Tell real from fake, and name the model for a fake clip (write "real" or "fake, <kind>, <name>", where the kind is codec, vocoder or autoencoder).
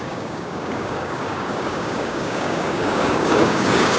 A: fake, codec, DAC